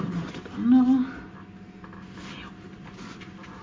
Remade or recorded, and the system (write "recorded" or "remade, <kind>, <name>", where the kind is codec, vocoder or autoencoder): recorded